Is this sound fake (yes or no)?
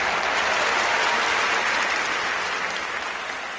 no